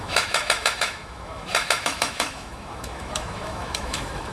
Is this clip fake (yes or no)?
yes